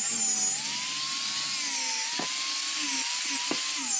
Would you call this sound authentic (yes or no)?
yes